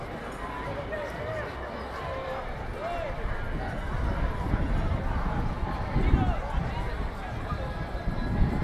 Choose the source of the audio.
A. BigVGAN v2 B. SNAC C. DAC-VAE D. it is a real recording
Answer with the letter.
D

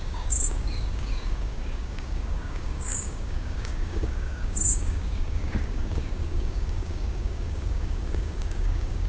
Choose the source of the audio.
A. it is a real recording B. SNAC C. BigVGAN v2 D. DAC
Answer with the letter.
D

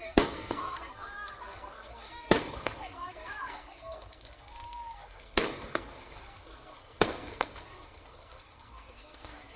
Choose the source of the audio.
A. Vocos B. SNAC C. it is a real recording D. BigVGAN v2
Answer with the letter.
B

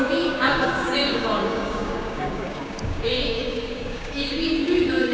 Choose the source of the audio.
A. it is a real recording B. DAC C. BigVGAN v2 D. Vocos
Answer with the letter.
B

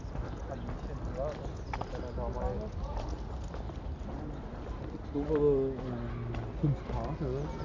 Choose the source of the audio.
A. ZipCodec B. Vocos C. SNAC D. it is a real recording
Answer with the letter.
D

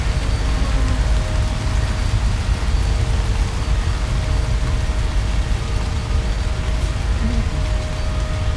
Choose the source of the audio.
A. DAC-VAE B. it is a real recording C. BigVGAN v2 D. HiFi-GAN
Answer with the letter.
B